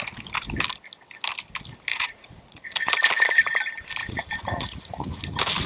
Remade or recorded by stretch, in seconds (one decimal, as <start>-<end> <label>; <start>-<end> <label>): 0.0-1.9 recorded; 1.9-2.9 remade; 2.9-4.0 recorded; 4.0-5.2 remade; 5.2-5.7 recorded